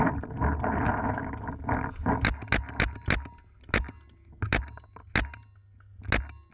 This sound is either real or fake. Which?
real